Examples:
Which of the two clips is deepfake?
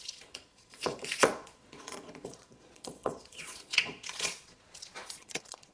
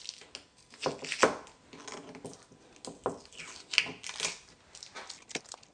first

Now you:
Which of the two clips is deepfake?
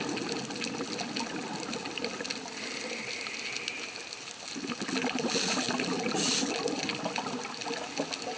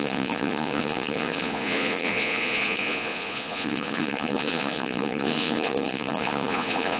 second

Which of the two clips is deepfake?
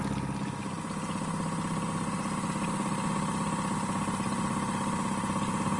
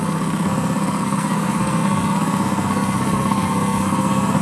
second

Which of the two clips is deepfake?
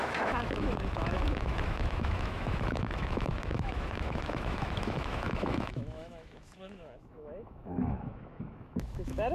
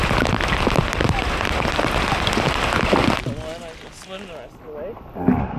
first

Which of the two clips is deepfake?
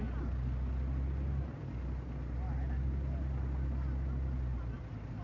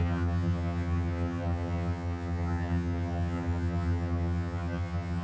second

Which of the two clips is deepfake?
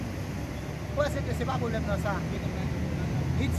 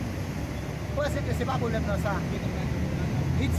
second